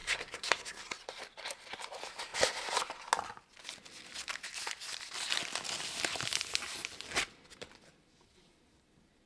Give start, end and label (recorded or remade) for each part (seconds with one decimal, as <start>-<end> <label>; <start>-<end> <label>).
0.0-0.8 remade; 0.8-9.3 recorded